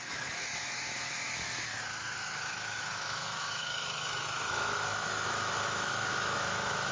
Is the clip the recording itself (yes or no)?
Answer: no